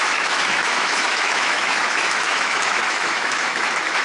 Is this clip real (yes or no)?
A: no